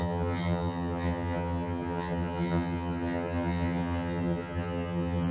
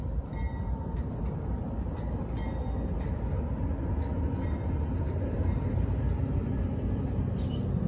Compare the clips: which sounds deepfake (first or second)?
first